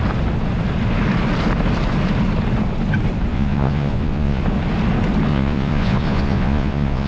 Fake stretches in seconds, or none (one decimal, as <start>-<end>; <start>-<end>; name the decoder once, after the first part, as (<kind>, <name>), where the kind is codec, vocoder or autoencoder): 3.3-4.4 (vocoder, Vocos); 5.3-7.1

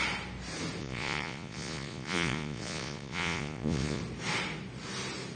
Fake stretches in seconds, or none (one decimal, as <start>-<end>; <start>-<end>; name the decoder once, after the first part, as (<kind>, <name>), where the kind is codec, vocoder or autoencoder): 0.8-4.0 (vocoder, Vocos)